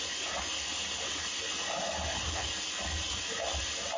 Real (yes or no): yes